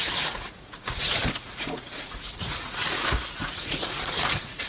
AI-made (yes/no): yes